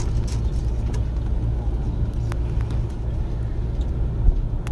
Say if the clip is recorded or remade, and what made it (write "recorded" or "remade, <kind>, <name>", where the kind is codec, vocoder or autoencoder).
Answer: recorded